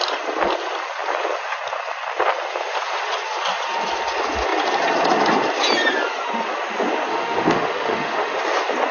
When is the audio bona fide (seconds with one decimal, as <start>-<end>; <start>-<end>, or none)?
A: 0.0-7.1; 8.4-8.9